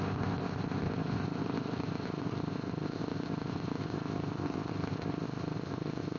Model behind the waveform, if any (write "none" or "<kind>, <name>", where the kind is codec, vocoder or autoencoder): codec, ZipCodec